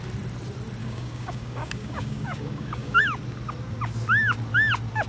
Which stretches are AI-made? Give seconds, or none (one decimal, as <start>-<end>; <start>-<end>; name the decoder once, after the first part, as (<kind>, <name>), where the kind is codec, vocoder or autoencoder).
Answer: 0.8-3.0 (codec, DAC)

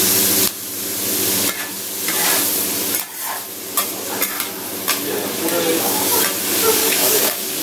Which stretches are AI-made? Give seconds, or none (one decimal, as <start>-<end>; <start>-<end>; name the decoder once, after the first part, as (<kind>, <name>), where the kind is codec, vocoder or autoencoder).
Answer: 5.7-6.2 (codec, DAC); 6.8-7.6

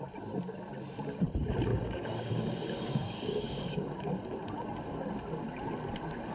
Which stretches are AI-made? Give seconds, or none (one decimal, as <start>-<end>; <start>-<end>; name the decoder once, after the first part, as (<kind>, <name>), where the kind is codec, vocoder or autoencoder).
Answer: 1.7-4.1 (codec, DAC)

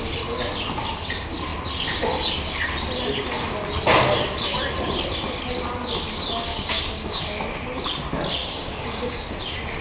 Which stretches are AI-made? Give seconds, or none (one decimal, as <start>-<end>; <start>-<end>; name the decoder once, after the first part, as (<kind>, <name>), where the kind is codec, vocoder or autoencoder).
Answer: 6.5-7.2 (codec, DAC); 8.4-9.4

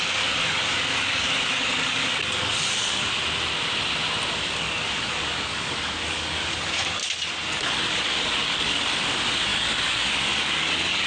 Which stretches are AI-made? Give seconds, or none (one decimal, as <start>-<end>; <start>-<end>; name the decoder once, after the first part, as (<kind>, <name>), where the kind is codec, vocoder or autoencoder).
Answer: 0.0-3.0 (codec, DAC); 4.3-7.0; 7.5-11.1

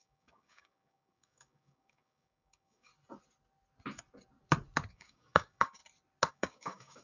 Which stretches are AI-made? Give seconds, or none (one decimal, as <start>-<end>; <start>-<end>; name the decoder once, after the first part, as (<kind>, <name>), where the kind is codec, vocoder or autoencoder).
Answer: 0.0-2.9 (codec, DAC); 4.9-5.8; 6.3-7.0